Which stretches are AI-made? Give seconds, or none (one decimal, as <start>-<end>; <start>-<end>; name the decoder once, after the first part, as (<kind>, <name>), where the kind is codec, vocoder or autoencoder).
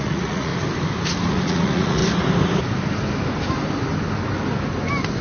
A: 0.0-0.5 (vocoder, Vocos); 1.3-2.0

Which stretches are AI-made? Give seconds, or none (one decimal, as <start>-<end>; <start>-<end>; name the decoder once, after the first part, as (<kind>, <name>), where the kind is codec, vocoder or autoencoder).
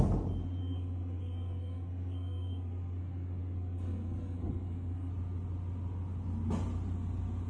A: 0.6-5.1 (codec, SNAC)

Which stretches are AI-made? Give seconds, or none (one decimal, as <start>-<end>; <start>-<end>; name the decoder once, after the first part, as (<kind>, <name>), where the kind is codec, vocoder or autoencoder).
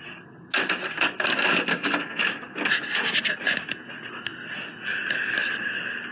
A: 1.7-2.2 (codec, SNAC)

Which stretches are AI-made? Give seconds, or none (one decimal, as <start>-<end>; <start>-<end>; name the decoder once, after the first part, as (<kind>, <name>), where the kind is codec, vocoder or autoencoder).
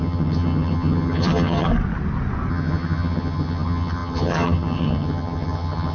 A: 0.0-1.7 (vocoder, HiFi-GAN); 2.5-5.9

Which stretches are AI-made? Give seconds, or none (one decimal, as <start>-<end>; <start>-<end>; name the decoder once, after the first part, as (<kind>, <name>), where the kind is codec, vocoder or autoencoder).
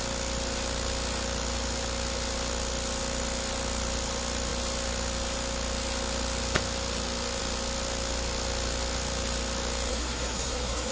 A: 9.9-10.9 (codec, SNAC)